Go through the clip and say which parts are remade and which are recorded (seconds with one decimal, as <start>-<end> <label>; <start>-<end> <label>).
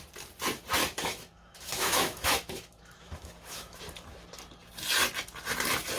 0.0-0.8 recorded; 0.8-3.8 remade; 3.8-6.0 recorded